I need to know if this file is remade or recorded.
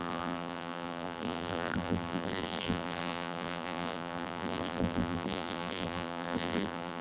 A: remade